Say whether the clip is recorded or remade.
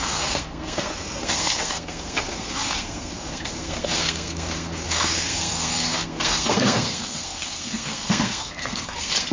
remade